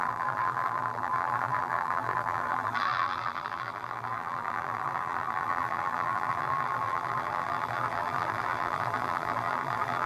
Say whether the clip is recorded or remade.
remade